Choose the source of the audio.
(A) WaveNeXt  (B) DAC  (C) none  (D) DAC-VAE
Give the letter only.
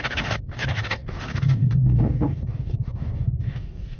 B